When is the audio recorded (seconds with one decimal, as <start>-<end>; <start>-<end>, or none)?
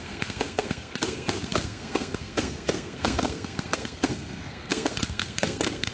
none